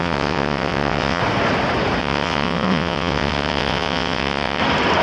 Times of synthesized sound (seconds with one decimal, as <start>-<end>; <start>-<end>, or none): 0.0-1.2; 2.0-4.6